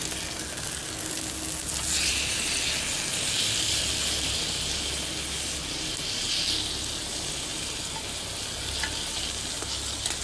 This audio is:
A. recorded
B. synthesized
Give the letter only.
A